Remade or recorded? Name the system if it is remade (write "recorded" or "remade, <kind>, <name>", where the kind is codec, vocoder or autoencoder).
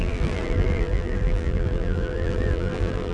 remade, vocoder, BigVGAN v2